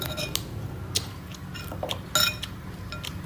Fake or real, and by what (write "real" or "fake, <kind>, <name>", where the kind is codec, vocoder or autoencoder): real